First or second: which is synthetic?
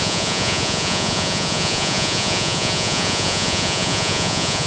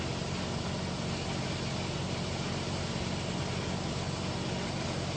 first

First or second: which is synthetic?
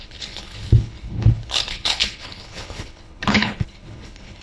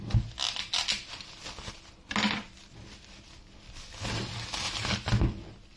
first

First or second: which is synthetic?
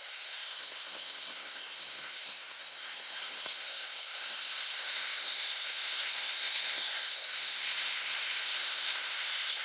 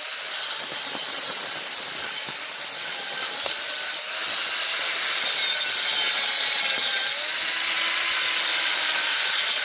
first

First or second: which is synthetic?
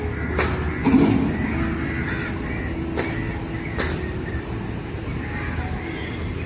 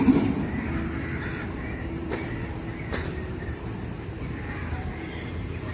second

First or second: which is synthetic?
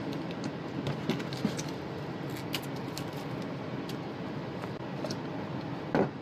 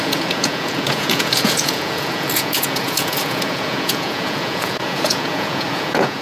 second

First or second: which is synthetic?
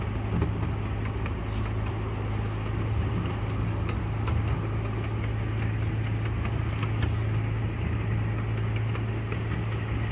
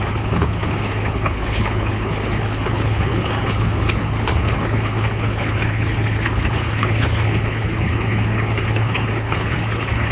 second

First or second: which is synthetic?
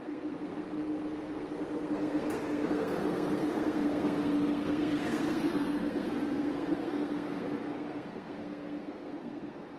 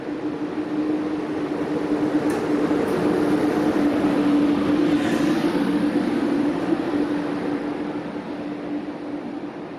first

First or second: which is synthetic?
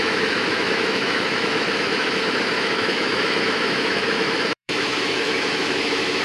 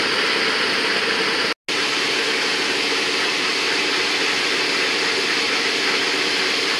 first